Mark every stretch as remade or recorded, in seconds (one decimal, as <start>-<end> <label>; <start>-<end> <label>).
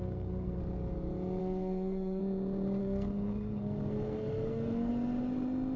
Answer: 0.0-0.6 remade; 0.6-1.4 recorded; 1.4-2.2 remade; 2.2-2.8 recorded; 2.8-4.9 remade; 4.9-5.8 recorded